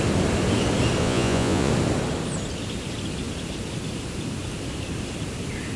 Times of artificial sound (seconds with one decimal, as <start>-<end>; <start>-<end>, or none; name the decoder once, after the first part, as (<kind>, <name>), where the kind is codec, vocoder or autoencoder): 1.0-1.7 (vocoder, Vocos)